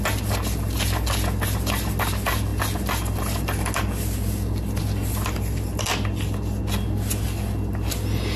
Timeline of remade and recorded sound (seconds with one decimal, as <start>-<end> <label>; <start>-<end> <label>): 0.0-8.4 recorded